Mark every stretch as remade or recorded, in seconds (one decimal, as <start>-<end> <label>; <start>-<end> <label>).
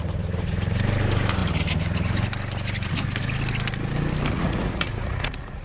0.0-4.3 recorded; 4.3-5.6 remade